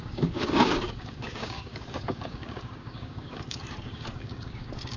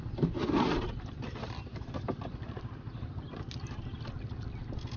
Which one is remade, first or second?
first